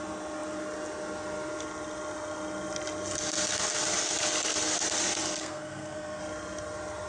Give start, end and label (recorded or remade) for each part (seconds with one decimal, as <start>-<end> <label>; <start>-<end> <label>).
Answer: 0.0-5.4 recorded; 5.4-6.2 remade; 6.2-7.1 recorded